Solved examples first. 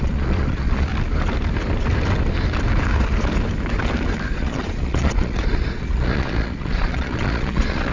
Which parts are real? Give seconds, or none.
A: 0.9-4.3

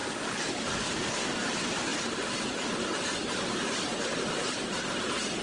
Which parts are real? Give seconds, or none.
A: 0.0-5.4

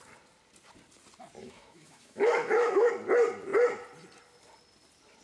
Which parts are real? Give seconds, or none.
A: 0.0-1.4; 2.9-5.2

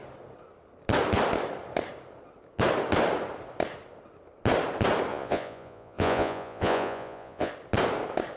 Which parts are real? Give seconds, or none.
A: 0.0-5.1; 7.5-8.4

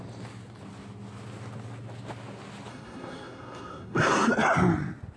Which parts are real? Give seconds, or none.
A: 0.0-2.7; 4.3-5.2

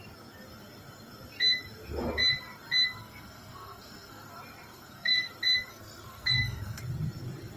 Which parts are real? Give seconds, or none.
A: 0.0-3.0; 4.3-4.7; 5.3-5.7; 6.8-7.6